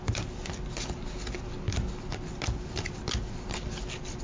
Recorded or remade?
recorded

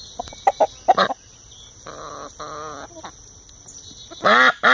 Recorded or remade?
recorded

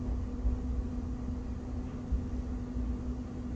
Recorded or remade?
recorded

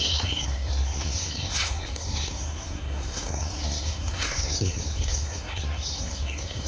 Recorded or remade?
remade